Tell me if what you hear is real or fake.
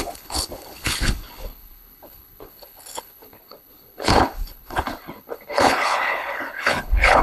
fake